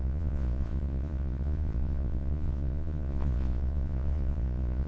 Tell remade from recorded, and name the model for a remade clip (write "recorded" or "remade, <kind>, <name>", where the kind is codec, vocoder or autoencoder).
remade, vocoder, Vocos